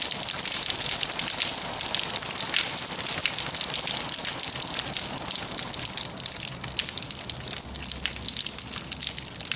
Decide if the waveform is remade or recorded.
recorded